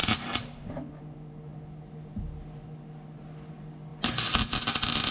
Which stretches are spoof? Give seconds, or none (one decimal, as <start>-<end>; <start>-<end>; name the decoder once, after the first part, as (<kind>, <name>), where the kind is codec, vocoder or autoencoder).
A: none